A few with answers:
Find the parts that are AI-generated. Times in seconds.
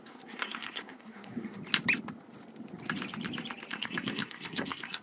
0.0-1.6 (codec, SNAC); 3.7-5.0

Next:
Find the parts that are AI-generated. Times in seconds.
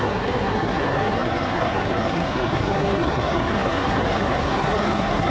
0.0-5.3 (codec, SNAC)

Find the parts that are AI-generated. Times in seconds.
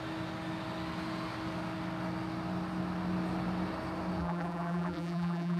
4.2-5.6 (vocoder, BigVGAN v2)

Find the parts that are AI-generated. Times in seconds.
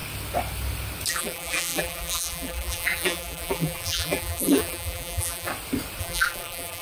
1.1-5.5 (vocoder, BigVGAN v2); 6.0-6.8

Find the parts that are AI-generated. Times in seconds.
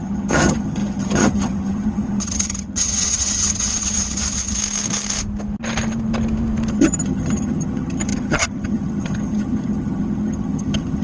0.0-4.6 (vocoder, HiFi-GAN); 6.7-11.0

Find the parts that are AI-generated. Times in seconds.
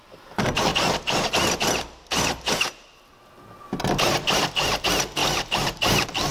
5.2-6.3 (vocoder, BigVGAN v2)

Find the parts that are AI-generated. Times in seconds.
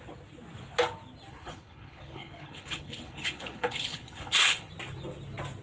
1.3-4.7 (codec, HILCodec)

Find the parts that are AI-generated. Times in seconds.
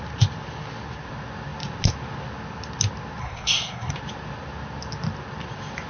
3.2-3.9 (codec, SNAC)